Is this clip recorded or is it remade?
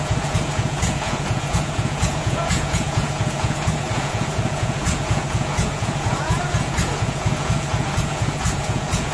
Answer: remade